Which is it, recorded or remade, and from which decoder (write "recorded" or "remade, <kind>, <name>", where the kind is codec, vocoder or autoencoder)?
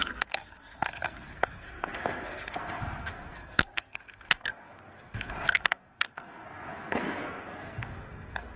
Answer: remade, codec, SNAC